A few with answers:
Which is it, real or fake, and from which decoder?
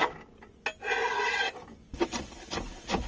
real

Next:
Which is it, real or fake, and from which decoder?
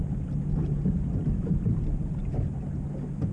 real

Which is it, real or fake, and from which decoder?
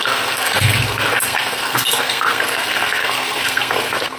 fake, codec, SNAC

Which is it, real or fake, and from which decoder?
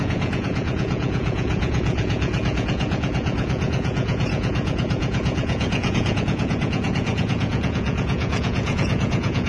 fake, vocoder, Vocos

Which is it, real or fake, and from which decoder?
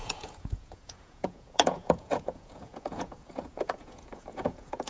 fake, vocoder, Vocos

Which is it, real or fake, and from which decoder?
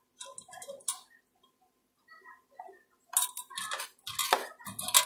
real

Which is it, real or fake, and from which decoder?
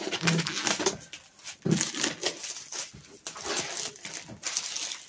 real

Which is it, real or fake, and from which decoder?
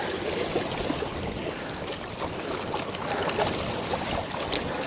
real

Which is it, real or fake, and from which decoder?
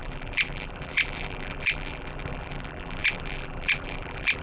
fake, vocoder, BigVGAN v2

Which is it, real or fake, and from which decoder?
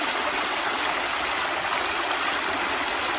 real